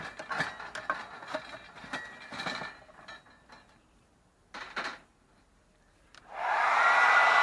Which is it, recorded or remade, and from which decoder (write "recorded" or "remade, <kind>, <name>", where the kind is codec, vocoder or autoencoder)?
recorded